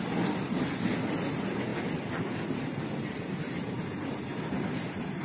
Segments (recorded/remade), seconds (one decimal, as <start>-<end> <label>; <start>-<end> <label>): 0.0-5.2 recorded